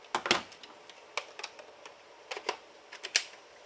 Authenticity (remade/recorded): recorded